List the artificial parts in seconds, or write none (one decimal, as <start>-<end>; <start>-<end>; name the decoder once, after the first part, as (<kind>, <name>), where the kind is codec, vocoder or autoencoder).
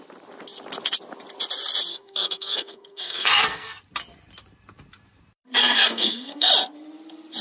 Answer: 1.9-3.8 (codec, SNAC); 5.6-6.5